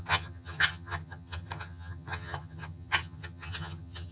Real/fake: fake